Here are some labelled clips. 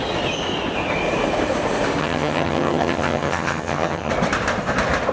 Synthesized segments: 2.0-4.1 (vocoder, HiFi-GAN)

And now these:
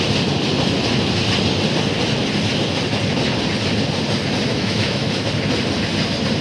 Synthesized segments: 4.5-5.3 (autoencoder, DAC-VAE)

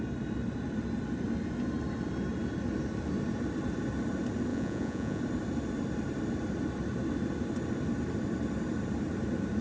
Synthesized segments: 4.5-5.2 (vocoder, Vocos)

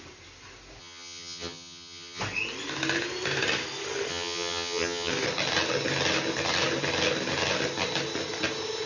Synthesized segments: 0.8-2.2 (vocoder, HiFi-GAN); 4.1-5.1

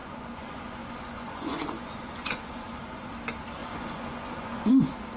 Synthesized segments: 0.0-3.1 (vocoder, Vocos); 3.6-4.7

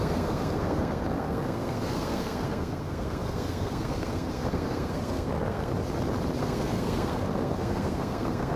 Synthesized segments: 0.0-5.7 (codec, SNAC); 6.4-8.6